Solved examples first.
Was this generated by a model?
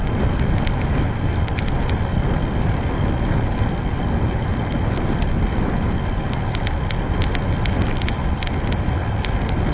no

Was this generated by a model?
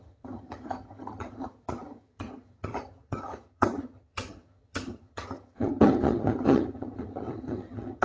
yes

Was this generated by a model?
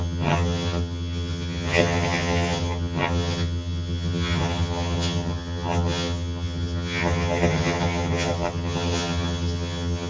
yes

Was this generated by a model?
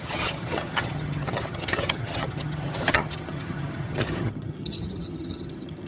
yes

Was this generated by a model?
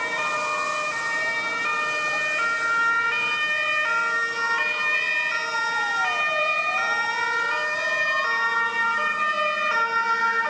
no